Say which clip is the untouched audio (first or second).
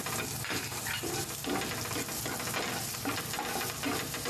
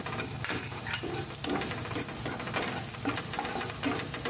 first